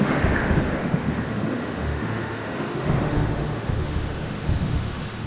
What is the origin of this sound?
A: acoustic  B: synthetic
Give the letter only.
B